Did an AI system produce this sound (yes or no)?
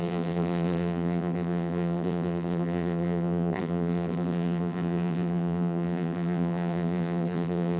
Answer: yes